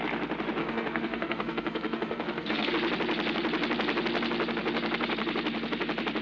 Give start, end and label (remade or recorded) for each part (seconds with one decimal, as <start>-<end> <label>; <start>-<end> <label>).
0.0-0.6 recorded; 0.6-2.7 remade; 2.7-6.2 recorded

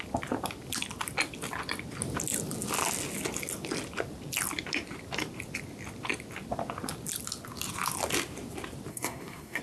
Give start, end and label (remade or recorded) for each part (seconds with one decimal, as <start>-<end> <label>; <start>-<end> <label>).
0.0-8.9 recorded; 8.9-9.6 remade

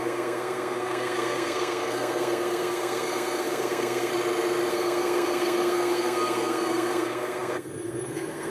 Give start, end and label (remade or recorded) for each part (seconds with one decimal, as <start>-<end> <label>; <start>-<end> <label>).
0.0-4.1 remade; 4.1-4.7 recorded; 4.7-8.5 remade

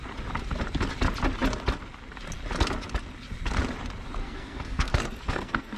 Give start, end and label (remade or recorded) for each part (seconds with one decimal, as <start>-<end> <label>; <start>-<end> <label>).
0.0-4.2 recorded; 4.2-5.8 remade